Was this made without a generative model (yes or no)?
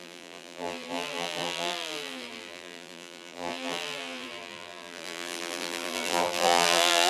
no